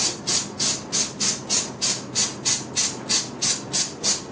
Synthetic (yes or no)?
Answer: no